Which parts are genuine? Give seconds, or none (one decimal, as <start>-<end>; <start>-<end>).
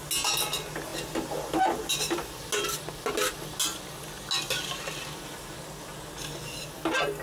0.0-7.2